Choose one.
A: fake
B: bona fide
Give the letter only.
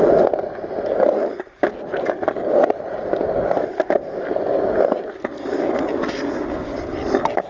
B